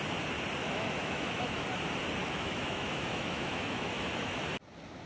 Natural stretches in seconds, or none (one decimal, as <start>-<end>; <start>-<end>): 0.0-0.6; 1.5-2.2; 4.4-5.1